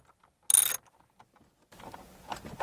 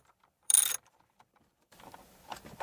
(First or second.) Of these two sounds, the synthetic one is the second